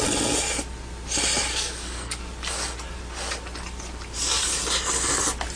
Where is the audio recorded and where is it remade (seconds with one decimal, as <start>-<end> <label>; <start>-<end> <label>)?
0.0-1.5 recorded; 1.5-2.2 remade; 2.2-5.6 recorded